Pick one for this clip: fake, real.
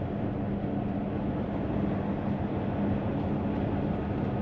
real